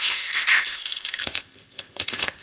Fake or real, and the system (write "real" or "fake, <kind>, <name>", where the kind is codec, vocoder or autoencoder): fake, codec, ZipCodec